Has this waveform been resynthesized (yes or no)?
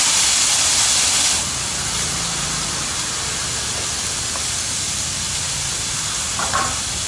no